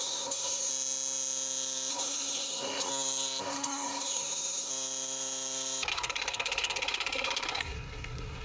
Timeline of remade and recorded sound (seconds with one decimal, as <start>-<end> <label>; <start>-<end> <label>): 0.0-0.7 remade; 0.7-1.9 recorded; 1.9-2.9 remade; 2.9-3.4 recorded; 3.4-4.7 remade; 4.7-5.9 recorded; 5.9-8.4 remade